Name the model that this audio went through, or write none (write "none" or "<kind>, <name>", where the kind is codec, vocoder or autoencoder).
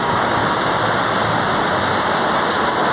none